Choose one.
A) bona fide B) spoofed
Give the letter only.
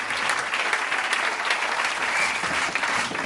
A